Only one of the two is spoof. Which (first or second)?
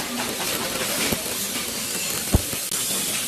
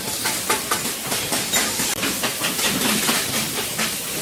second